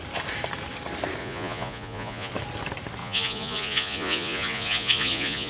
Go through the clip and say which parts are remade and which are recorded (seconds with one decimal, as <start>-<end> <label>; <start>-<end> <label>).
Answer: 0.0-1.2 recorded; 1.2-2.3 remade; 2.3-3.0 recorded; 3.0-5.5 remade